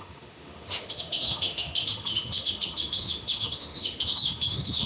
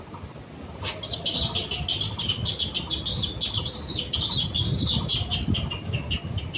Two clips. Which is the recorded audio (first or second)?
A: second